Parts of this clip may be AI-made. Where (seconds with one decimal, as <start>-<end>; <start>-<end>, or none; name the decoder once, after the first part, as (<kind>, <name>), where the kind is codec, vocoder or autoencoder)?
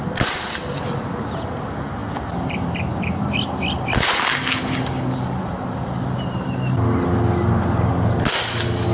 none